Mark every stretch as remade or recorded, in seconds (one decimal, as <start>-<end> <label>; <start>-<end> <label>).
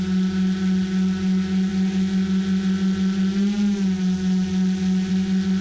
0.0-5.6 recorded